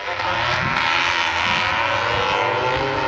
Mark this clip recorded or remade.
recorded